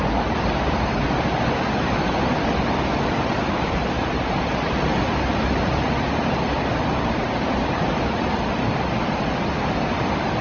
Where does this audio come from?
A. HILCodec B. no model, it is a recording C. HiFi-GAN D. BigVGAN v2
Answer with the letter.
D